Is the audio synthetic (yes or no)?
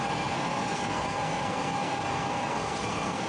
yes